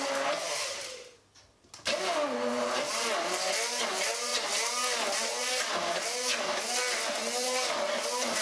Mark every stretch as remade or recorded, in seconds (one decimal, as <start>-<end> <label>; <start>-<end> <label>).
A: 0.0-8.4 recorded